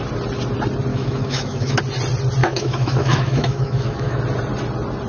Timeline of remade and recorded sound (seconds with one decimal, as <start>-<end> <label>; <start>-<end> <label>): 0.0-0.9 recorded; 0.9-1.8 remade; 1.8-2.4 recorded; 2.4-4.2 remade; 4.2-5.1 recorded